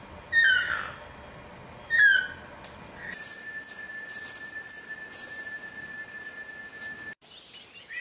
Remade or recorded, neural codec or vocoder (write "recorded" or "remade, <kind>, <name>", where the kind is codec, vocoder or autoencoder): recorded